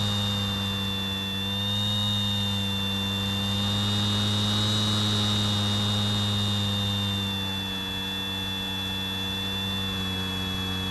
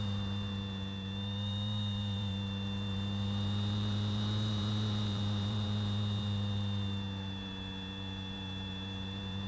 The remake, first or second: second